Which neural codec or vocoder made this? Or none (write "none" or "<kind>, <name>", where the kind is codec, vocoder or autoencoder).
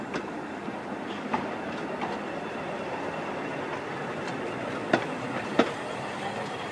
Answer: vocoder, BigVGAN v2